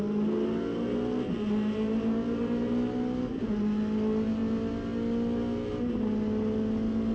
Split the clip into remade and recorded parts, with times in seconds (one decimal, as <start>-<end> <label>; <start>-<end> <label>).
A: 0.0-7.1 recorded